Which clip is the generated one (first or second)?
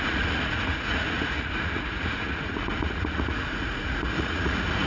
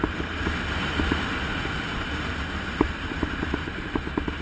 first